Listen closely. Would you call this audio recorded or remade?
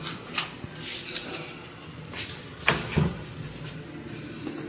recorded